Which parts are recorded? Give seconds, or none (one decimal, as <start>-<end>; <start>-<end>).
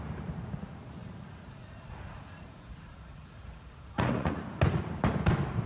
0.0-1.0; 4.4-5.7